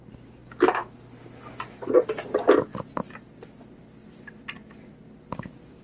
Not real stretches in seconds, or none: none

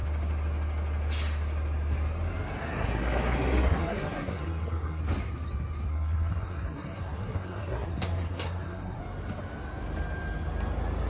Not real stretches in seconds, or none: 2.6-5.0 (codec, SNAC); 5.9-9.0

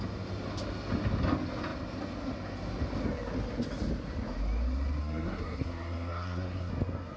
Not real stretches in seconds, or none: 5.0-6.7 (codec, SNAC)

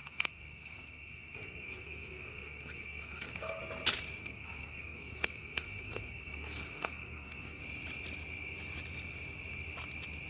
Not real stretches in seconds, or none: 0.0-3.6 (codec, SNAC); 4.2-7.6

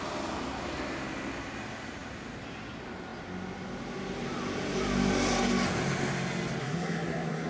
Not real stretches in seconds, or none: 6.6-7.5 (codec, SNAC)